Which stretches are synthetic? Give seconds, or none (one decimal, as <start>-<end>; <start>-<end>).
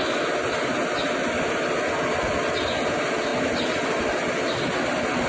none